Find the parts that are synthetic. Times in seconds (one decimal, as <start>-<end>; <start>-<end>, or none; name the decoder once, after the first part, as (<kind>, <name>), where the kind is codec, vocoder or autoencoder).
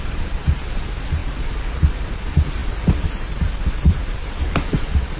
0.0-5.2 (vocoder, BigVGAN v2)